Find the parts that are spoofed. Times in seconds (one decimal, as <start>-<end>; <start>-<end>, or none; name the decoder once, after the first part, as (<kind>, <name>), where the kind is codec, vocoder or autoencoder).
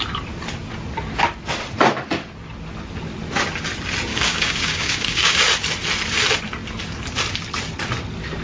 4.1-5.4 (codec, DAC)